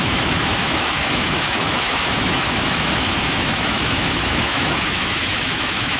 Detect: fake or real fake